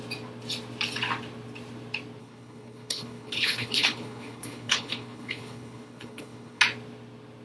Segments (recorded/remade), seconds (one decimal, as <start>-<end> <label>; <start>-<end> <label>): 0.0-2.2 recorded; 2.2-6.6 remade; 6.6-7.4 recorded